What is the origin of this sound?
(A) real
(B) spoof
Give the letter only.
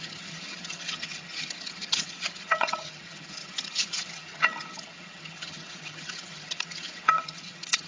B